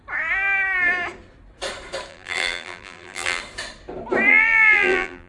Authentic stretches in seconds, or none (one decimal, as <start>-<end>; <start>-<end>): 0.0-2.1; 3.4-4.3